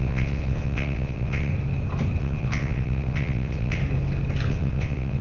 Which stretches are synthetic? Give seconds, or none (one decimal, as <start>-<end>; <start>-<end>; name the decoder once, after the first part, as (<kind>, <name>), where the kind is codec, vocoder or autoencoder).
0.0-1.5 (vocoder, WaveNeXt); 2.2-3.8; 4.5-5.2